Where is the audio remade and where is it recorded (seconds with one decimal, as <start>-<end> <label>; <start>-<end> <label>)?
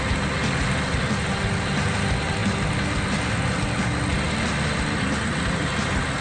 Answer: 0.0-6.2 recorded